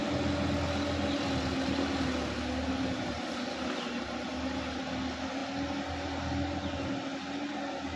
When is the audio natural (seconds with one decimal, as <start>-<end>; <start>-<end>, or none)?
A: 0.0-8.0

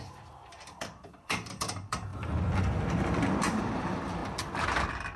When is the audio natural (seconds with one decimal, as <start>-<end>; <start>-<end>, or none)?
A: 2.1-3.6; 4.2-5.2

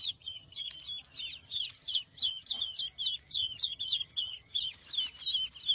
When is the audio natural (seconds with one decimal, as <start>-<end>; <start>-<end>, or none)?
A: 0.7-1.4; 2.8-3.3; 4.9-5.7